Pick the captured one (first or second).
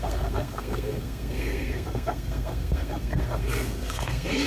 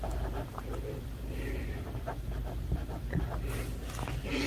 second